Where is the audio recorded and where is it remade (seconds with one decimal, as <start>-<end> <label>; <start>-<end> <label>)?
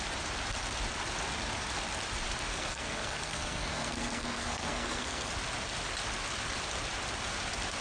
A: 0.0-2.5 recorded; 2.5-5.3 remade; 5.3-7.8 recorded